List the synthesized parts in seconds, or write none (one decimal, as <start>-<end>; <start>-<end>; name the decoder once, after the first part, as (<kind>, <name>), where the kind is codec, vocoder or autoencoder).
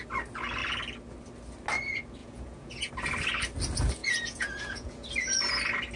2.2-2.9 (vocoder, Vocos); 4.0-5.1